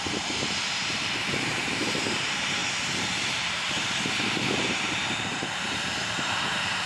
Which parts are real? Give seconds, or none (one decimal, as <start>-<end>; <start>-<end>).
none

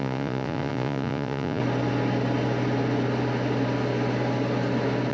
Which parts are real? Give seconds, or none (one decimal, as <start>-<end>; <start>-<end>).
1.6-5.1